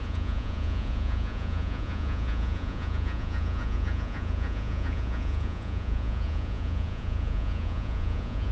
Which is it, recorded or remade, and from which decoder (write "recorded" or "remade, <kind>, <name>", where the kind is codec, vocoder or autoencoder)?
remade, vocoder, Vocos